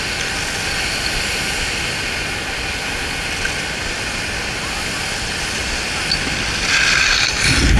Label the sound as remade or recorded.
recorded